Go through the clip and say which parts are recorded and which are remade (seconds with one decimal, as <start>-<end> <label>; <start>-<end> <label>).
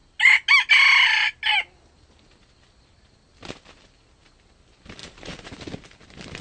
0.0-5.0 recorded; 5.0-5.5 remade; 5.5-6.4 recorded